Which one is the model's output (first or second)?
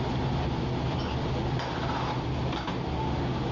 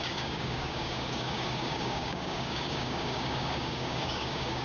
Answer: second